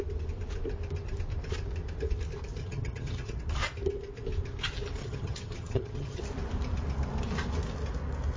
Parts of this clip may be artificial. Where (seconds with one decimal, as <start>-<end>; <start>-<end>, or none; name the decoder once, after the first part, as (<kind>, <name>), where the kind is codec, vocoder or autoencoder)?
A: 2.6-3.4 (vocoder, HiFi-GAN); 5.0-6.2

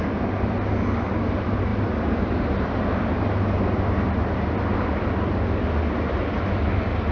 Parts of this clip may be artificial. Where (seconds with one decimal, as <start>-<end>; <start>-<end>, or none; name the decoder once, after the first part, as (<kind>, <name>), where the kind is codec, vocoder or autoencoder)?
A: none

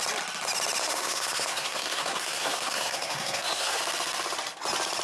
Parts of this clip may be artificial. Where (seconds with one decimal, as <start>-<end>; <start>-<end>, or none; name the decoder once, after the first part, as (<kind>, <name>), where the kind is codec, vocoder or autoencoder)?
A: 0.8-3.8 (codec, SNAC)